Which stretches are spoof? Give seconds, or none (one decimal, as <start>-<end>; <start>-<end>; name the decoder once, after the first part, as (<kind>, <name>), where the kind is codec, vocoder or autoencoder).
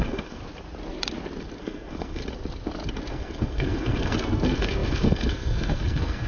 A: 0.0-0.4 (codec, SNAC); 1.6-2.2; 3.1-6.3